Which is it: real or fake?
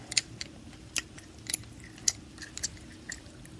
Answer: real